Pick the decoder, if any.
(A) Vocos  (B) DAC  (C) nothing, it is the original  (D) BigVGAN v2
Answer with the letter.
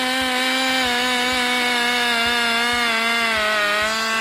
C